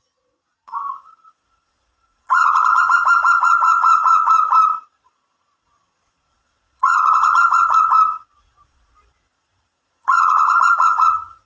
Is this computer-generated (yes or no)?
yes